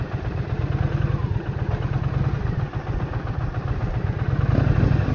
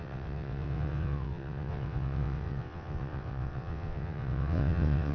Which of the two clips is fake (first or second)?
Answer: second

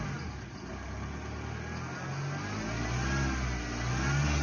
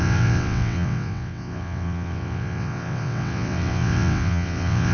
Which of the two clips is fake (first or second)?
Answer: second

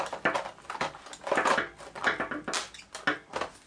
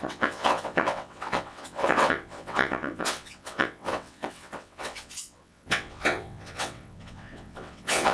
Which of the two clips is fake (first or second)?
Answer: second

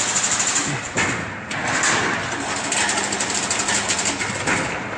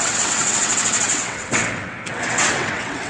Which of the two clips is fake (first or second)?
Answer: second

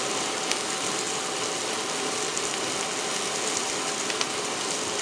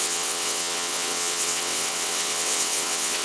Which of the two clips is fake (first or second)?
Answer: second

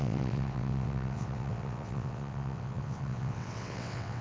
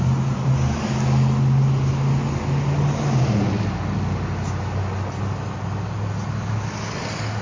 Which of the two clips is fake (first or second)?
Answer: first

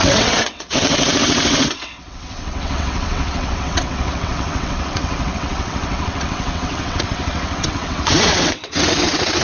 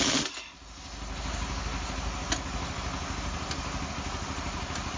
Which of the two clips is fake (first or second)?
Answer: first